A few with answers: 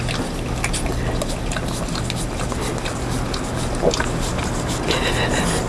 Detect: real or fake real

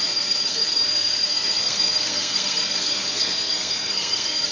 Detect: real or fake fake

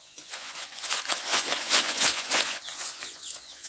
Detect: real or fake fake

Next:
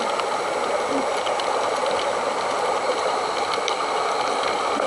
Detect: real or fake real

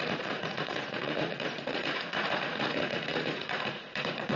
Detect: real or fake fake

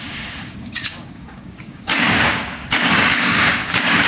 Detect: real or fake fake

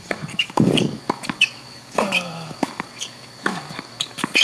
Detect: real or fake fake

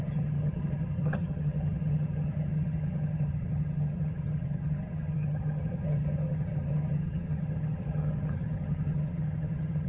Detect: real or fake fake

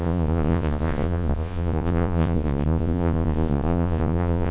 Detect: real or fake fake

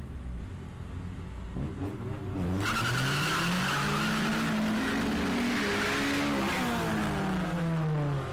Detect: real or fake real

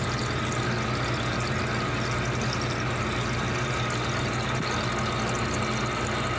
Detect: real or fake real